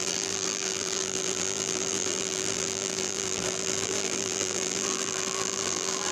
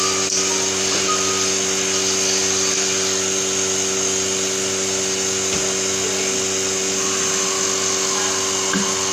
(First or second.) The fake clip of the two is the first